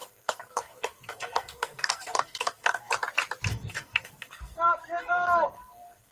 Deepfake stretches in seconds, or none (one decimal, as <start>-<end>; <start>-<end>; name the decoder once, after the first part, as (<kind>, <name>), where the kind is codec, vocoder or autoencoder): 0.0-2.9 (codec, SNAC); 3.5-6.1